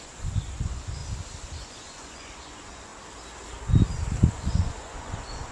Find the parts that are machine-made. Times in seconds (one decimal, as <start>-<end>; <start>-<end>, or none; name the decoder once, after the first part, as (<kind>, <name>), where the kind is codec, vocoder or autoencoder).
0.0-1.0 (vocoder, Vocos); 1.5-2.9; 4.3-5.5